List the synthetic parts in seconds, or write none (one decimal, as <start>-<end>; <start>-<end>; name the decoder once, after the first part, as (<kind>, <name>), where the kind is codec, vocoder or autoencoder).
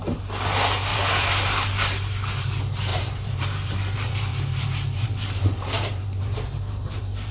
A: 0.9-1.7 (vocoder, BigVGAN v2); 2.9-7.3